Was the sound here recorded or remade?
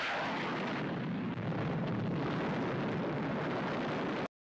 recorded